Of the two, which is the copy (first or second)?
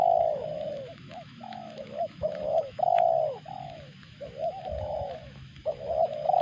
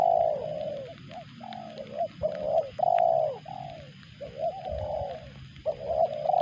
first